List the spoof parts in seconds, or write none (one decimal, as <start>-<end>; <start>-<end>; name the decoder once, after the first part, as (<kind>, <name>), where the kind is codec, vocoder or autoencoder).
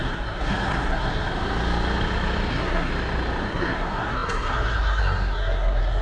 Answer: 0.0-1.3 (codec, SNAC); 2.5-2.9; 3.4-6.0